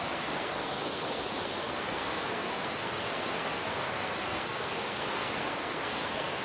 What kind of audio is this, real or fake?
fake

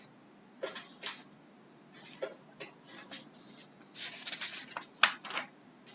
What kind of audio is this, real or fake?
real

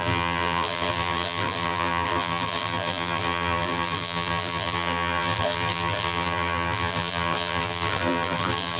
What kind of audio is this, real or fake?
fake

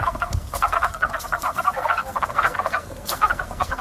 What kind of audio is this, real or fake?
fake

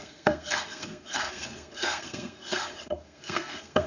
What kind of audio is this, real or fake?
fake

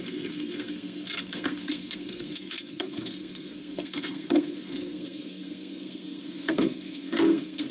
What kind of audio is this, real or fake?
fake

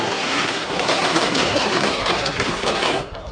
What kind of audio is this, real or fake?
fake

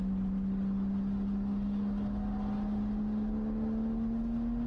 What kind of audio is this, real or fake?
real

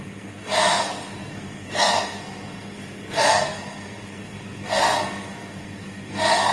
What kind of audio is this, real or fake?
fake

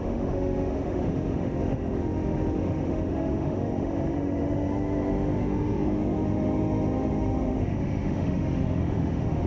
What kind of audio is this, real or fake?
fake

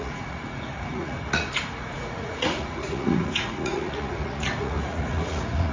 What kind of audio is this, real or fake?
fake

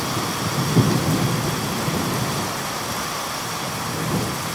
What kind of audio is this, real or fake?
real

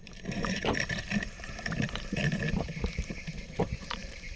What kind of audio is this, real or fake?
fake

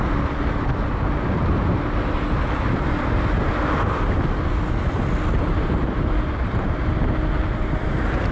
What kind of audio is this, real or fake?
real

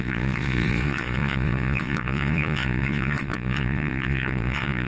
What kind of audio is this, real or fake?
fake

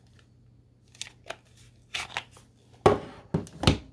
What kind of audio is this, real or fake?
real